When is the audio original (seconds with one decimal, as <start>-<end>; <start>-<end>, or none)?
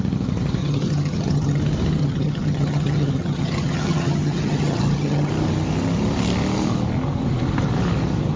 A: 0.0-0.6; 1.6-2.0; 5.3-8.4